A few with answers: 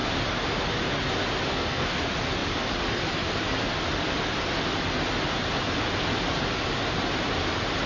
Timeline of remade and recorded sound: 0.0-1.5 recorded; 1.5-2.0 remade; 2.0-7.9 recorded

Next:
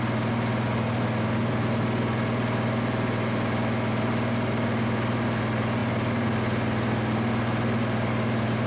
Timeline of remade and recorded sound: 0.0-8.7 recorded

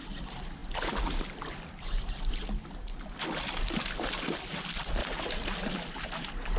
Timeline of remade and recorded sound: 0.0-6.6 recorded

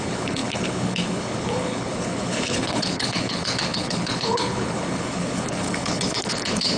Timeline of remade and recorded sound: 0.0-6.8 remade

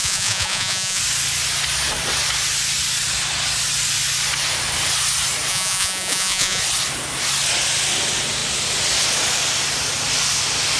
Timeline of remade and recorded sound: 0.0-1.0 remade; 1.0-5.5 recorded; 5.5-6.6 remade; 6.6-10.8 recorded